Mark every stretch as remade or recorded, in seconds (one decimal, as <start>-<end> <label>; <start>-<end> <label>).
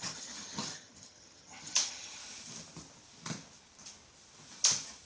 0.0-2.2 remade; 2.2-5.1 recorded